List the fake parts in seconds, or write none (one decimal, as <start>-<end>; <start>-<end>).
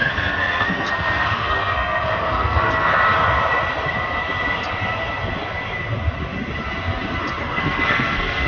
0.0-2.9; 7.4-8.5